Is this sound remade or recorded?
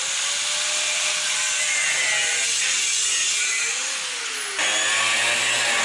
recorded